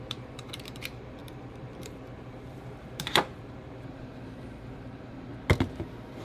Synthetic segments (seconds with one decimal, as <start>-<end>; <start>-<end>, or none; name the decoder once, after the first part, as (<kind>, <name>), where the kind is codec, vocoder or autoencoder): 0.0-5.3 (vocoder, BigVGAN v2)